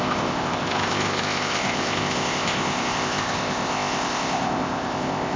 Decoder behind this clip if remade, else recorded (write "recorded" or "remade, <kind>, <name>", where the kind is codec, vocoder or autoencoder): remade, codec, ZipCodec